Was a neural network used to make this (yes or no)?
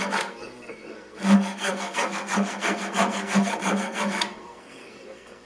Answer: yes